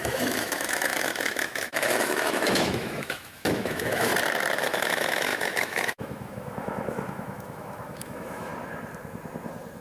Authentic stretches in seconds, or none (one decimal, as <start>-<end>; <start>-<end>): 4.1-4.6; 8.5-9.8

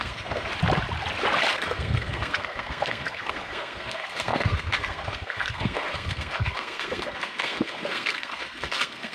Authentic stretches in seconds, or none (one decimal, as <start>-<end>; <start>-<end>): 0.5-1.5

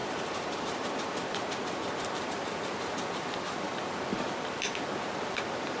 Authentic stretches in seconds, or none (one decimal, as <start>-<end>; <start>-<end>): 0.9-5.8

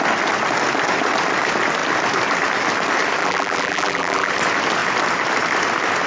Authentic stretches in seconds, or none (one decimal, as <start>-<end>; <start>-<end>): 0.0-3.2; 4.3-6.1

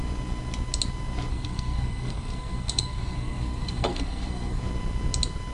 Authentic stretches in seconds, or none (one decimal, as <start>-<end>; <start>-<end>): 0.0-1.3; 4.6-5.5

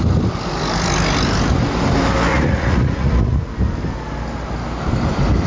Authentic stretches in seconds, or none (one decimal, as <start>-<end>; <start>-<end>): 0.0-2.3; 3.5-5.5

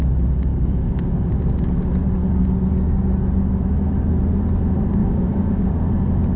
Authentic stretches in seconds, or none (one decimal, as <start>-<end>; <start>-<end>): 0.0-0.5; 1.2-5.0; 5.8-6.4